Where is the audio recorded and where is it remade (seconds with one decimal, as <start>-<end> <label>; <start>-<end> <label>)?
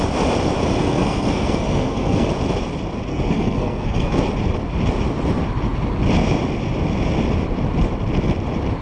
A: 0.0-0.8 recorded; 0.8-2.3 remade; 2.3-3.1 recorded; 3.1-4.3 remade; 4.3-8.8 recorded